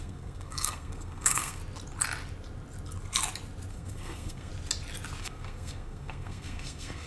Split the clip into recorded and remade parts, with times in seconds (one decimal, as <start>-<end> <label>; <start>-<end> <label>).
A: 0.0-1.6 remade; 1.6-3.7 recorded; 3.7-4.5 remade; 4.5-5.2 recorded; 5.2-7.1 remade